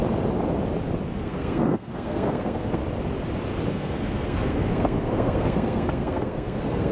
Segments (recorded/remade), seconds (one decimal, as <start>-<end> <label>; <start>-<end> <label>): 0.0-1.2 recorded; 1.2-2.8 remade; 2.8-3.7 recorded; 3.7-6.9 remade